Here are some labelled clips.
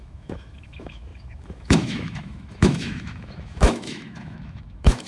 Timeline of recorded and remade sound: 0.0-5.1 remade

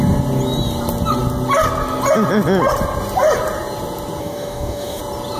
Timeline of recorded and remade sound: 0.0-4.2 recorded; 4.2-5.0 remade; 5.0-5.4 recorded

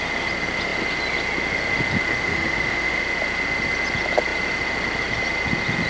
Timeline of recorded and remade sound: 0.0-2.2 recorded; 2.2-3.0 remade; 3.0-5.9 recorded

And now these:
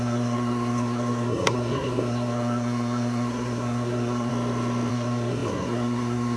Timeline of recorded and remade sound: 0.0-4.3 remade; 4.3-4.9 recorded; 4.9-6.4 remade

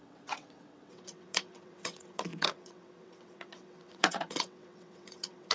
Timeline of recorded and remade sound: 0.0-5.5 remade

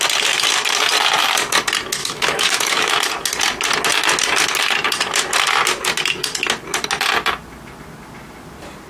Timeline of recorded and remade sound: 0.0-2.0 recorded; 2.0-2.9 remade; 2.9-8.9 recorded

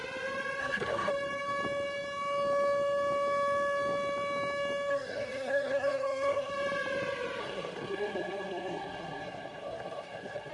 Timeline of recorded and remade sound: 0.0-0.6 recorded; 0.6-1.1 remade; 1.1-4.9 recorded; 4.9-6.5 remade; 6.5-7.4 recorded; 7.4-10.5 remade

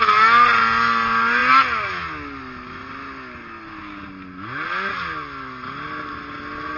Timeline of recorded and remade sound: 0.0-6.8 recorded